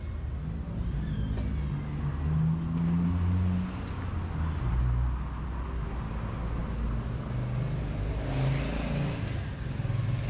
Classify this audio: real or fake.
real